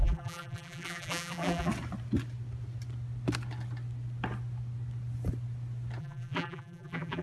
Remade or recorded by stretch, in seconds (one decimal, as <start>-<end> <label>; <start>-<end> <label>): 0.0-1.7 remade; 1.7-6.0 recorded; 6.0-7.2 remade